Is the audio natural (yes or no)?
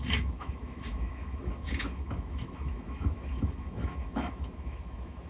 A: no